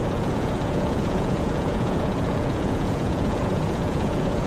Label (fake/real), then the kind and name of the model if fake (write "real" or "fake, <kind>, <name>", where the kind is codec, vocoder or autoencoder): fake, vocoder, Vocos